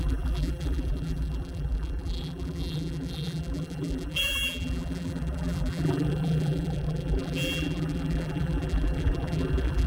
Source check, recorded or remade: remade